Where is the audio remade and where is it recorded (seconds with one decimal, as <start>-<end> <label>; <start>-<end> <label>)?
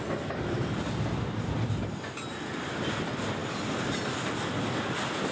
0.0-5.3 recorded